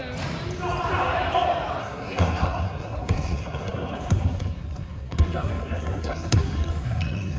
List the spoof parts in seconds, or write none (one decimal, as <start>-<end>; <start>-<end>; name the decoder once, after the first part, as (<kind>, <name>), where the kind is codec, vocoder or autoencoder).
1.8-7.4 (codec, SNAC)